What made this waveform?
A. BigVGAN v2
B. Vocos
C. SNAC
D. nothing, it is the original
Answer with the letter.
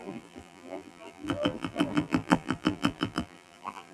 A